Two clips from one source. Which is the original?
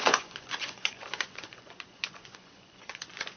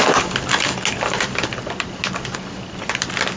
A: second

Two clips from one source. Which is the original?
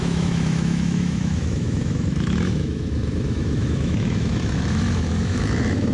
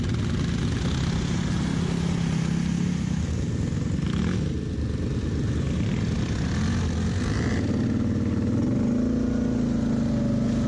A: second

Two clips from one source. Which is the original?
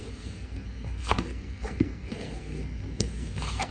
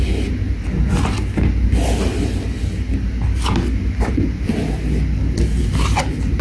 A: second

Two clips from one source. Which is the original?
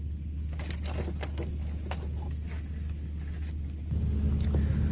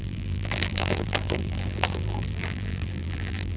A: first